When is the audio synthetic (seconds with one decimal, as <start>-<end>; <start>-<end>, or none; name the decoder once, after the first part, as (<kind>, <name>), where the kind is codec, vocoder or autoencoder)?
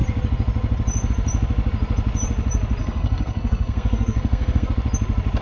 2.8-4.7 (codec, SNAC)